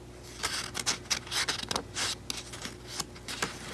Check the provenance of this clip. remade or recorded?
recorded